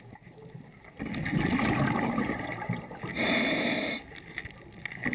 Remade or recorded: recorded